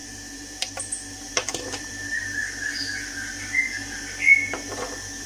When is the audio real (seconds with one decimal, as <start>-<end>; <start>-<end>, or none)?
1.9-5.3